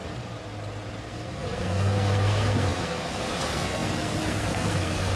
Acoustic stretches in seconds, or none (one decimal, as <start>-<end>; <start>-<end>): 0.0-1.0